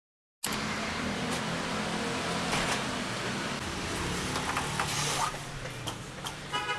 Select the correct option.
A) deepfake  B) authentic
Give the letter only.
B